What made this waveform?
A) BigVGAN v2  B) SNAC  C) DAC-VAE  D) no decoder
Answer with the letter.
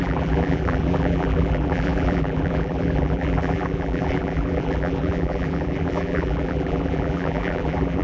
A